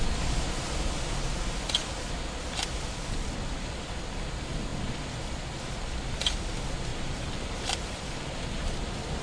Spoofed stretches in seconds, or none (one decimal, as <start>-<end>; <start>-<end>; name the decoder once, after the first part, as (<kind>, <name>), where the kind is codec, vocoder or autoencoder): 6.9-8.1 (vocoder, BigVGAN v2)